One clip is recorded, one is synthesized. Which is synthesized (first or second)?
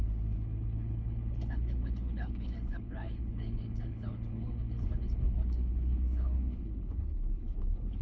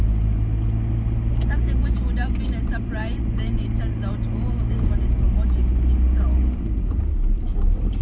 first